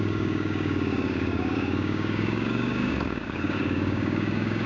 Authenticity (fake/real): fake